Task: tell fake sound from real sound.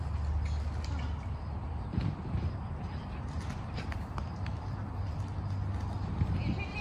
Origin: real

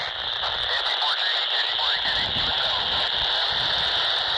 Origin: real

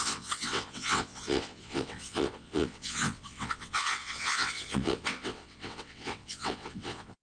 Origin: fake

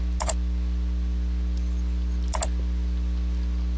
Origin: real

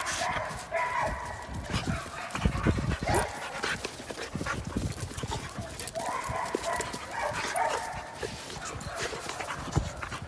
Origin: real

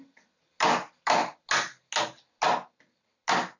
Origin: real